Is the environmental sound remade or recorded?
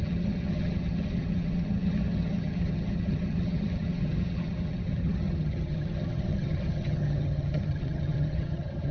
remade